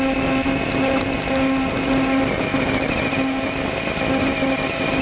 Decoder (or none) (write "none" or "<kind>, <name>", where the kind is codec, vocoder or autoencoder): none